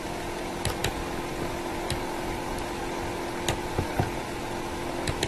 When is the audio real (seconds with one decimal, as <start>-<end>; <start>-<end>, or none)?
0.0-0.8; 2.6-3.6; 4.2-5.3